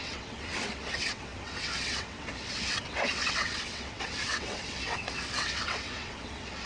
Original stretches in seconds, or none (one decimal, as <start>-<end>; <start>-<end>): none

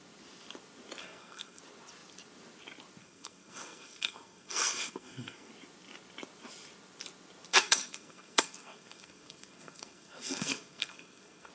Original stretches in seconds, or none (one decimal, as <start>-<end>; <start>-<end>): 0.0-1.0; 1.6-3.0; 5.5-7.5